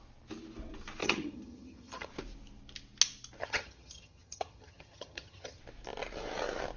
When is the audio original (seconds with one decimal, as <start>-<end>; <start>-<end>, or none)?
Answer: 0.0-1.0; 2.1-3.4; 5.6-6.8